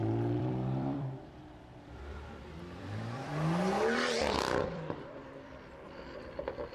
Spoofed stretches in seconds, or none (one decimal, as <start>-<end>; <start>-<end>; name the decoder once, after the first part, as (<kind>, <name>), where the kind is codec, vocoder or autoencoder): 0.0-3.3 (vocoder, BigVGAN v2); 4.6-6.7